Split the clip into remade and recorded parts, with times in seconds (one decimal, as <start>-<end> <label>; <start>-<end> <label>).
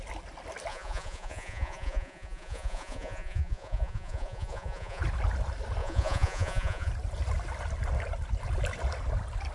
0.0-0.7 recorded; 0.7-5.0 remade; 5.0-5.8 recorded; 5.8-6.9 remade; 6.9-9.5 recorded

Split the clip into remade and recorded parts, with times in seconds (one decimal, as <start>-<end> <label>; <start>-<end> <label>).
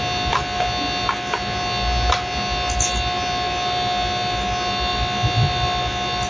0.0-6.3 recorded